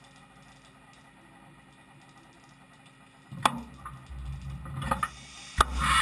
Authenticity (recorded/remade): recorded